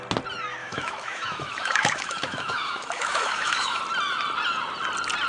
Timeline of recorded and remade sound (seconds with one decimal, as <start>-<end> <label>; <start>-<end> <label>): 0.0-0.6 recorded; 0.6-3.8 remade; 3.8-5.3 recorded